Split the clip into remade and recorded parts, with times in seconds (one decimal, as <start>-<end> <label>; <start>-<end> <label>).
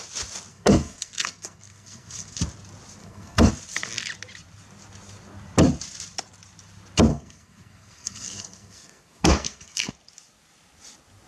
0.0-0.5 recorded; 0.5-2.4 remade; 2.4-3.0 recorded; 3.0-3.5 remade; 3.5-7.1 recorded; 7.1-9.9 remade; 9.9-11.3 recorded